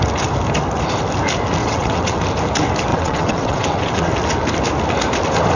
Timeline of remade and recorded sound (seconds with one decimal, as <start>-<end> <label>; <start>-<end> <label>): 0.0-1.6 recorded; 1.6-2.2 remade; 2.2-2.9 recorded; 2.9-4.1 remade; 4.1-5.6 recorded